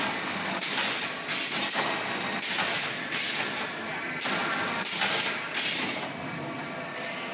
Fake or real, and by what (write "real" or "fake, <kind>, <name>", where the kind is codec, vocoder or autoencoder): real